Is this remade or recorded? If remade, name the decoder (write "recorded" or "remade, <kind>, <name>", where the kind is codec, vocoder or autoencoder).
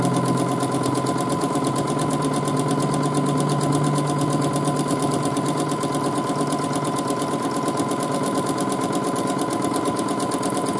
recorded